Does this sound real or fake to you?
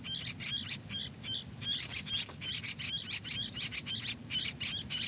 real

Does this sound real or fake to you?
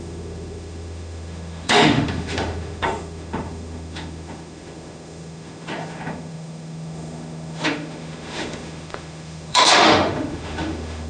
fake